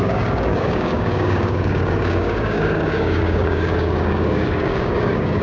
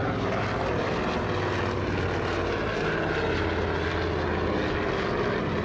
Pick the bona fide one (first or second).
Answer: second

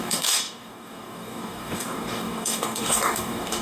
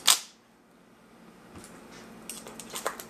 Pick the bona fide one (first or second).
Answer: second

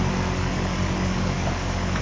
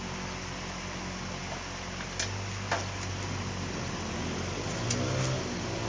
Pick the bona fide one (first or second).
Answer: second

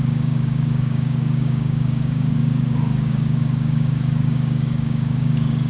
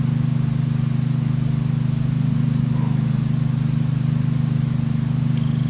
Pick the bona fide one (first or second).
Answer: second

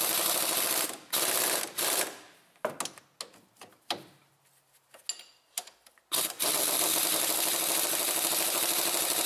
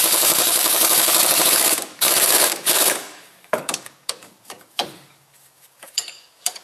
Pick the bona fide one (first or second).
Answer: first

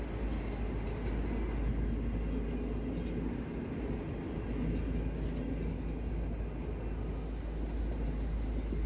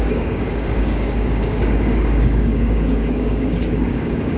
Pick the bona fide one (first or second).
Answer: first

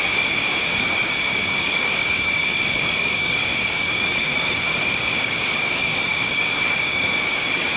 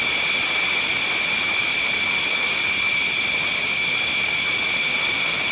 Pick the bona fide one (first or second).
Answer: second